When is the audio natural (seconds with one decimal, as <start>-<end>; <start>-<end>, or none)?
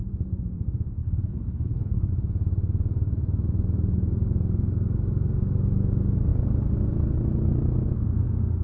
0.0-1.0; 2.1-8.6